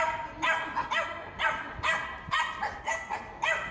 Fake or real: real